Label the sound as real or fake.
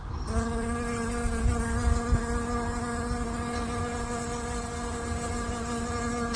real